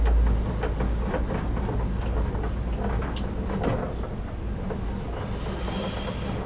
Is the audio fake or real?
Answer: real